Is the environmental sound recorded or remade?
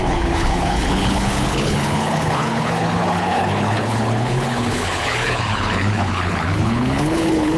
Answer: remade